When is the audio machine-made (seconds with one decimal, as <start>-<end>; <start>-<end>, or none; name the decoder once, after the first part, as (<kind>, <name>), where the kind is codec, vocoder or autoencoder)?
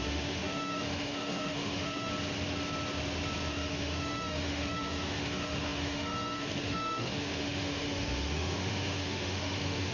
0.0-2.1 (autoencoder, DAC-VAE); 3.5-9.9